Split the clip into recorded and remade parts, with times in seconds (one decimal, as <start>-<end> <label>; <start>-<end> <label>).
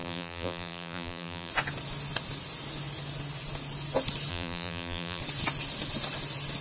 0.0-1.5 remade; 1.5-4.3 recorded; 4.3-5.2 remade; 5.2-6.6 recorded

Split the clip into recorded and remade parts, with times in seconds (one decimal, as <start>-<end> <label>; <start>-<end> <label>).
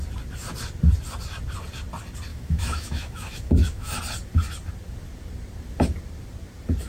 0.0-2.3 recorded; 2.3-4.0 remade; 4.0-6.9 recorded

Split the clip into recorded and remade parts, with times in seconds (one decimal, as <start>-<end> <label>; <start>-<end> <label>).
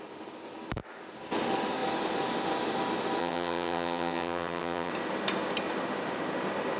0.0-3.2 recorded; 3.2-4.9 remade; 4.9-6.8 recorded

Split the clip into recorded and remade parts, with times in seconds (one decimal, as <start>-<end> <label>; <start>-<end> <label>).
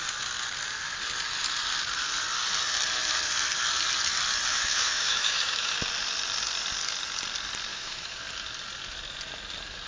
0.0-4.5 recorded; 4.5-5.7 remade; 5.7-7.7 recorded; 7.7-8.2 remade; 8.2-9.9 recorded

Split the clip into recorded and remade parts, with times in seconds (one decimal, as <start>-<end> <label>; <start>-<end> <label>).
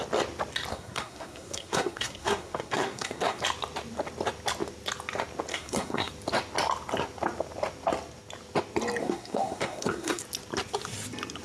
0.0-0.7 recorded; 0.7-3.4 remade; 3.4-5.5 recorded; 5.5-6.1 remade; 6.1-9.0 recorded; 9.0-10.2 remade; 10.2-11.4 recorded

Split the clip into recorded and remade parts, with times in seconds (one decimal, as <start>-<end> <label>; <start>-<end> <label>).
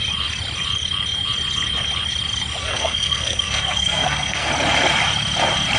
0.0-2.6 recorded; 2.6-4.5 remade; 4.5-5.8 recorded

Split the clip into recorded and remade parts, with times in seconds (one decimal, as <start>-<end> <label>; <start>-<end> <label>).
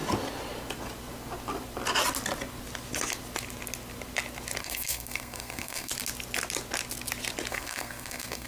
0.0-4.6 recorded; 4.6-5.9 remade; 5.9-7.5 recorded; 7.5-8.5 remade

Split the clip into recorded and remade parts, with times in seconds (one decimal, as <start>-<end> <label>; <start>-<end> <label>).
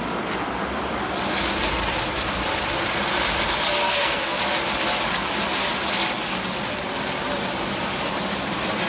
0.0-3.8 recorded; 3.8-4.4 remade; 4.4-8.9 recorded